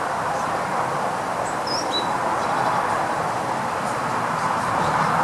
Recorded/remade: remade